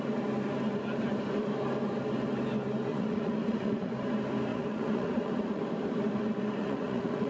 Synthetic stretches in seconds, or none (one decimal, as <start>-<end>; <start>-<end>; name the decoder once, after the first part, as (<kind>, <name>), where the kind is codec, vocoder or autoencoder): 2.9-3.9 (vocoder, Vocos); 4.5-5.6; 6.6-7.3